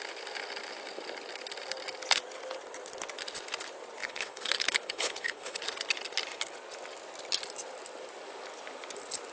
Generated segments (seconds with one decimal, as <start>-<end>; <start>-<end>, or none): 4.0-5.6